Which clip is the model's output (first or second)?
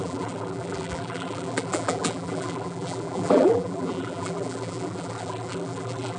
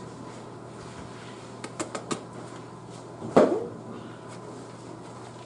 first